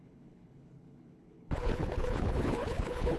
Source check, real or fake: fake